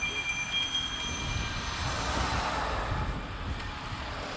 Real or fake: real